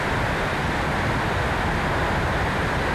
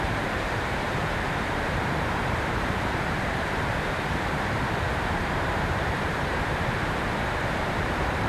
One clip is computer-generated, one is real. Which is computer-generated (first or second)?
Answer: second